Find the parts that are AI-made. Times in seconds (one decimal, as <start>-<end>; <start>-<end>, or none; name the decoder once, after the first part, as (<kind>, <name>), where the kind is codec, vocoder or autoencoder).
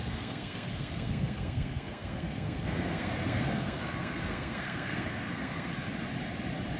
0.0-5.7 (codec, SNAC)